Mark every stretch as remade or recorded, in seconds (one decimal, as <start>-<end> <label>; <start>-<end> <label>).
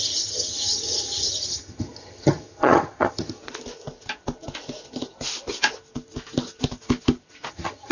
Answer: 0.0-3.4 remade; 3.4-7.5 recorded; 7.5-7.9 remade